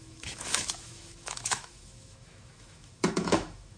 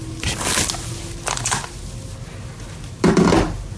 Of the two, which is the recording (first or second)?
second